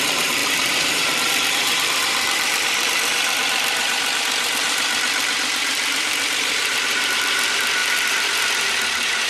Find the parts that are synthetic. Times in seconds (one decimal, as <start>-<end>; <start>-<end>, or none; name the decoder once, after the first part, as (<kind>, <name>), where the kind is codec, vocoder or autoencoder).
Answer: 0.0-9.3 (vocoder, BigVGAN v2)